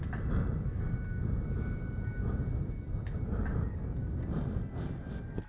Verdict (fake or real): real